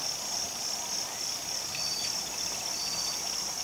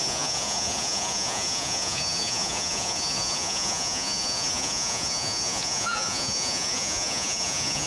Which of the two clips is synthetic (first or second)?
second